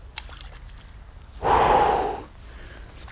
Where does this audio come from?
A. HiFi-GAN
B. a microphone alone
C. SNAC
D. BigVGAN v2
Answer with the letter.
B